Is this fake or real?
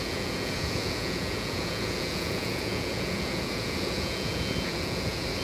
fake